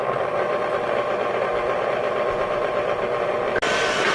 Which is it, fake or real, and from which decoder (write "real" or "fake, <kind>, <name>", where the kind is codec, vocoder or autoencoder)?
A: real